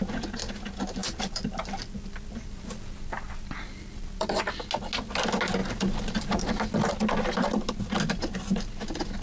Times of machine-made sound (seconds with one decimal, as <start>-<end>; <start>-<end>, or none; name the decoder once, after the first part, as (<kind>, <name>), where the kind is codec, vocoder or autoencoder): 1.0-4.4 (vocoder, BigVGAN v2); 5.6-6.9